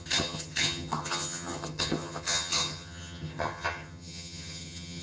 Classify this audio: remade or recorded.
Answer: remade